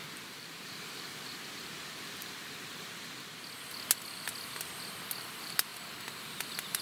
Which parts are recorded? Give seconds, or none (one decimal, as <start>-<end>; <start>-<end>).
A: 2.9-6.8